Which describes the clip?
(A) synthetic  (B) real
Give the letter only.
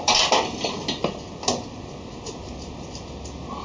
B